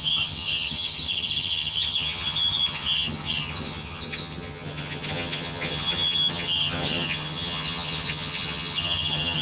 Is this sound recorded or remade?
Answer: remade